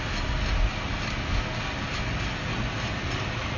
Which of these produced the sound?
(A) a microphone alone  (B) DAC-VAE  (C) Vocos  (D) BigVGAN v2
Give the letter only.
A